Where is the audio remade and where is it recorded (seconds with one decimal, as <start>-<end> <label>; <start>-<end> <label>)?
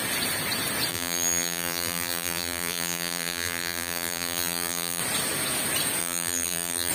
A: 0.0-0.9 recorded; 0.9-5.0 remade; 5.0-6.0 recorded; 6.0-6.9 remade